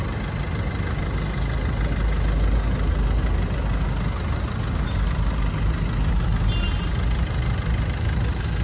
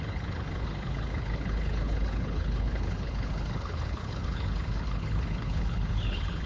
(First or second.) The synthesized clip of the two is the second